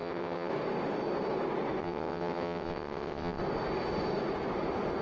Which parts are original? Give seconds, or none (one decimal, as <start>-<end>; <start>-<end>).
0.5-1.8; 3.4-5.0